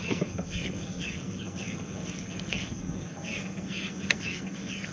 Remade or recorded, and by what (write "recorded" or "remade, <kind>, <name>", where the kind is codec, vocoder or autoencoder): remade, codec, SNAC